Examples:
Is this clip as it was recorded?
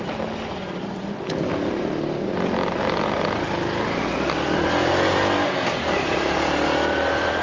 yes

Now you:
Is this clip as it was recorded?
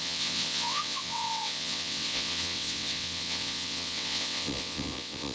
no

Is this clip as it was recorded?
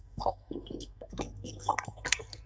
no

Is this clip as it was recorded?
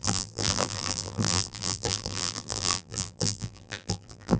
no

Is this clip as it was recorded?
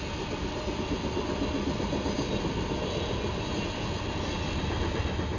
yes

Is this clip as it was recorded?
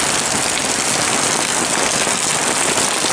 yes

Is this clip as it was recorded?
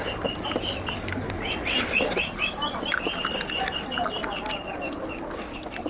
yes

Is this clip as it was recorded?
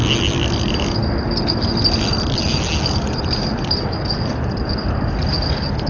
yes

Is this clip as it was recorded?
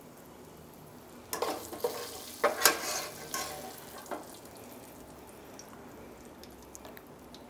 yes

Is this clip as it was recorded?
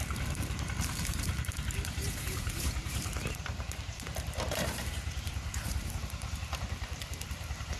no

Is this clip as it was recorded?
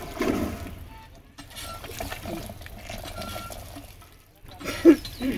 yes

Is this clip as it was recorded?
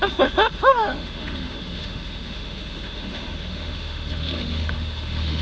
no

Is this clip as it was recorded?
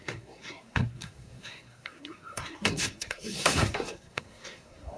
no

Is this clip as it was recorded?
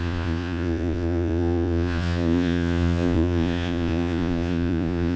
no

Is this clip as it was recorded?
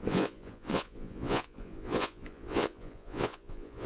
no